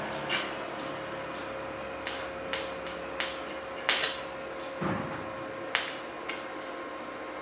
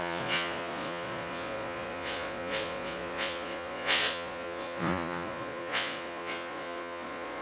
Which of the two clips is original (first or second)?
first